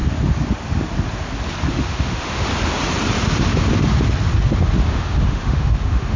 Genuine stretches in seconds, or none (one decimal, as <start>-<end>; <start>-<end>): 0.0-1.7; 2.5-4.9